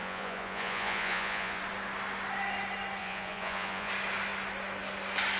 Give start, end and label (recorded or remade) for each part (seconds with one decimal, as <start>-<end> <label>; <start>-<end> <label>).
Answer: 0.0-1.6 remade; 1.6-3.0 recorded; 3.0-3.9 remade; 3.9-5.4 recorded

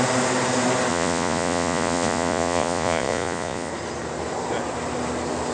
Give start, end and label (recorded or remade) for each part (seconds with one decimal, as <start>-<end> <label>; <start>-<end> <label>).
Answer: 0.0-0.9 recorded; 0.9-3.7 remade; 3.7-5.5 recorded

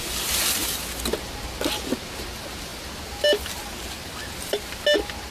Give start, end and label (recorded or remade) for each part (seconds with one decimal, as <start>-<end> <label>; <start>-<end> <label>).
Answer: 0.0-5.3 recorded

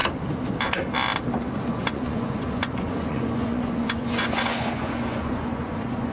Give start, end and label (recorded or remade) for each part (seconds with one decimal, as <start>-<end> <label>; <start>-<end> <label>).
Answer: 0.0-1.7 recorded; 1.7-6.1 remade

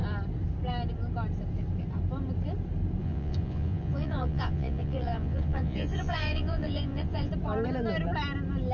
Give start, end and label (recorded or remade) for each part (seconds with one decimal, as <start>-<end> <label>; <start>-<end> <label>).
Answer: 0.0-3.0 recorded; 3.0-7.3 remade; 7.3-8.7 recorded